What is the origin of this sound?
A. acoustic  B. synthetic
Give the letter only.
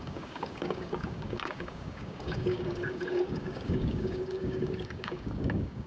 B